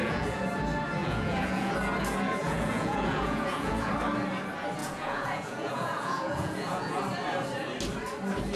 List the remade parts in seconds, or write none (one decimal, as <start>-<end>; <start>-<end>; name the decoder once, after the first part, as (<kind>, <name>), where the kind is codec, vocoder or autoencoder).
0.0-0.5 (vocoder, Vocos); 1.0-1.7; 2.4-3.9; 4.8-7.0